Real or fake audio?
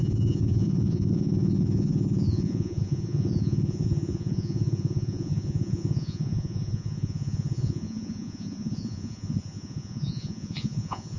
fake